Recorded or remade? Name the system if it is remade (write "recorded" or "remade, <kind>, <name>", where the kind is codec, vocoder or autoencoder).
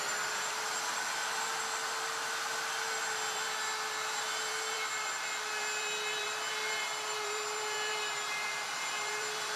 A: remade, vocoder, BigVGAN v2